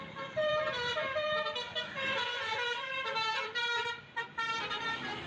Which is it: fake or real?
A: fake